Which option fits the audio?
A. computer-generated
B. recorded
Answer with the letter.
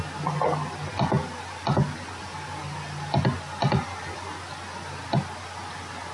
B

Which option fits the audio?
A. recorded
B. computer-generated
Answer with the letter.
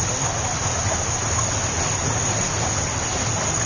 A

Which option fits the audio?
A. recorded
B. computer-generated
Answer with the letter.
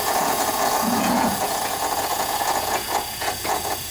B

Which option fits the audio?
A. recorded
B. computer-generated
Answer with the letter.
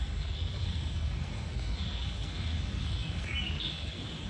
B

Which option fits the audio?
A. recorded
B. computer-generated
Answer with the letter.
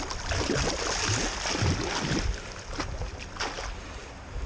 A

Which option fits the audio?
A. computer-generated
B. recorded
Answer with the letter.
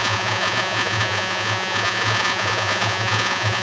A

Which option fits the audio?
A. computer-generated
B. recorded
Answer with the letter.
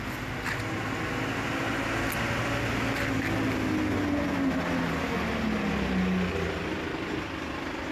B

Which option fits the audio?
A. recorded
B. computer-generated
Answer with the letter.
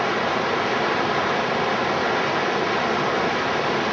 A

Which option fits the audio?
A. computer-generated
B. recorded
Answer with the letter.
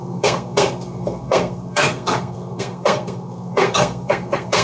A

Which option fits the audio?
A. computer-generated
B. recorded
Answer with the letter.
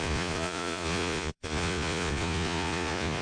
A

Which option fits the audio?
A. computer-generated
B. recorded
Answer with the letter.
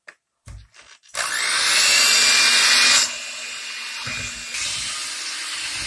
B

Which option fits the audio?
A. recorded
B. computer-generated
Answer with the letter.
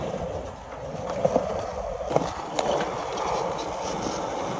A